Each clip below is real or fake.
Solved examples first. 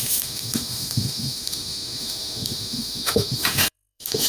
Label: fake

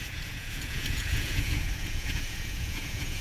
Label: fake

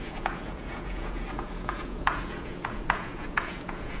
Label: fake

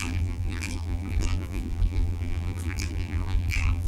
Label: fake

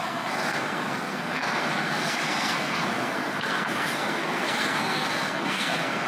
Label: fake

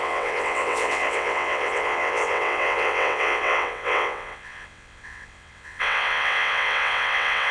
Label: fake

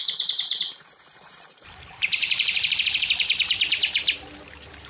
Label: fake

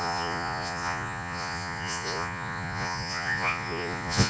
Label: fake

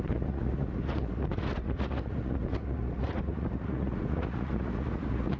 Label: fake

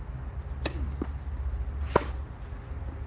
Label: real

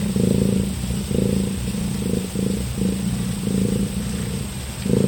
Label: real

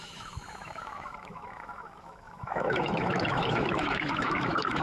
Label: fake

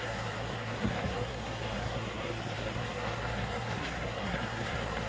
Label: fake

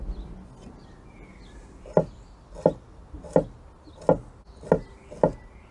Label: real